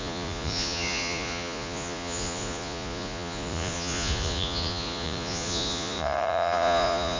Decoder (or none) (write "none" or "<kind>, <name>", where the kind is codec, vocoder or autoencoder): vocoder, Vocos